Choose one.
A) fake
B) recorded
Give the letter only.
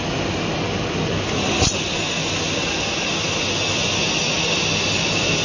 B